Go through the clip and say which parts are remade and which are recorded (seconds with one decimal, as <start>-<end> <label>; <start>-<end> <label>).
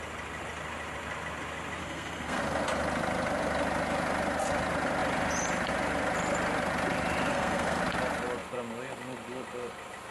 0.0-1.8 recorded; 1.8-2.4 remade; 2.4-7.3 recorded; 7.3-7.8 remade; 7.8-10.1 recorded